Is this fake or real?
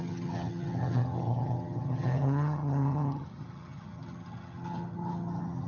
fake